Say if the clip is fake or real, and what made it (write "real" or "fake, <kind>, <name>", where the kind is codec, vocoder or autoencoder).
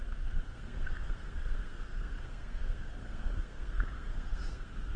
fake, codec, SNAC